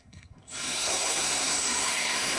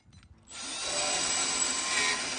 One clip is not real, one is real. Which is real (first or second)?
second